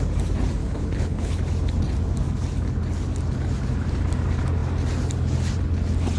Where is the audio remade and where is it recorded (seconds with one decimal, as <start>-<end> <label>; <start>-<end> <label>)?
0.0-0.6 recorded; 0.6-1.4 remade; 1.4-6.2 recorded